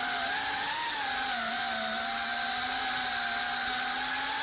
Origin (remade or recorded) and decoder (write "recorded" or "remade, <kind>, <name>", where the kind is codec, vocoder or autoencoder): recorded